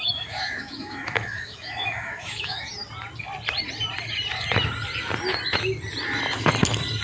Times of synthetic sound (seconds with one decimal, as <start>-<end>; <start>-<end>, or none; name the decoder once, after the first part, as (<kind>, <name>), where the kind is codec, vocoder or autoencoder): 0.0-2.7 (autoencoder, DAC-VAE)